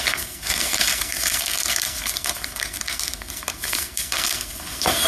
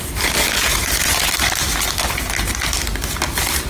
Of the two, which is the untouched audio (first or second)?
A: second